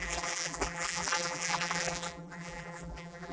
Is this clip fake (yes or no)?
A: yes